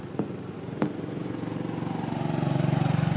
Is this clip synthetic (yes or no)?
no